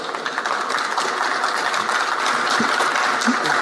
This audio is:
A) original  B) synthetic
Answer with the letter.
A